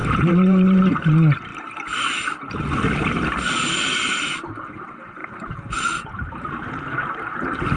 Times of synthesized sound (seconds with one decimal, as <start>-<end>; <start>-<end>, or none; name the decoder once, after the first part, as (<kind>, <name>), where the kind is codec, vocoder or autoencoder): 0.0-0.9 (vocoder, BigVGAN v2); 1.5-2.5; 5.2-6.8